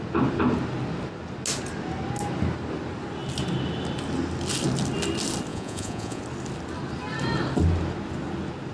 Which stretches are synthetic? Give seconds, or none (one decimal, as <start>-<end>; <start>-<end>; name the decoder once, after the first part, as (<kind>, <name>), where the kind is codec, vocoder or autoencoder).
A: 5.5-6.2 (vocoder, Vocos)